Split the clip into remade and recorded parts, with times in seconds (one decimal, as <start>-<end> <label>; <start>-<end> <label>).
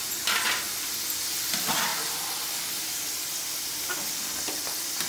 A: 0.0-5.1 recorded